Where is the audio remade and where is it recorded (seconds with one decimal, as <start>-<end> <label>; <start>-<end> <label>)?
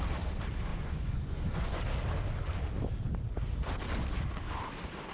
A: 0.0-0.7 recorded; 0.7-1.8 remade; 1.8-5.1 recorded